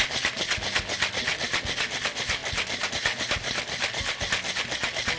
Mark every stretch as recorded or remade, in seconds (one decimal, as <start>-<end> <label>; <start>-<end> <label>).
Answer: 0.0-5.2 recorded